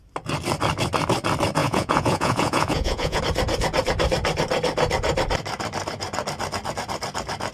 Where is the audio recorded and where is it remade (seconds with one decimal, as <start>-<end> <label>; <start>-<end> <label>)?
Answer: 0.0-1.6 recorded; 1.6-3.2 remade; 3.2-7.5 recorded